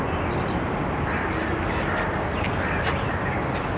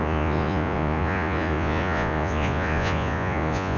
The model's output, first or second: second